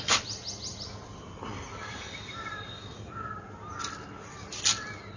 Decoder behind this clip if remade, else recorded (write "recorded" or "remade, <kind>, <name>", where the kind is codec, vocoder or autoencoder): recorded